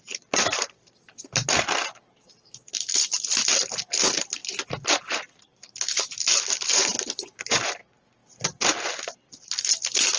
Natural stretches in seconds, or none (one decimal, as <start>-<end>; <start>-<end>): 0.0-10.2